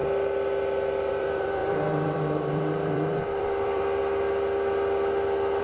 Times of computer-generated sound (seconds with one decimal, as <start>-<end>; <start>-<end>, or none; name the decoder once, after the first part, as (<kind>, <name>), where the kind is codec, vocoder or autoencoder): 1.1-4.0 (vocoder, BigVGAN v2)